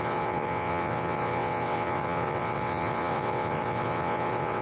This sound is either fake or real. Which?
fake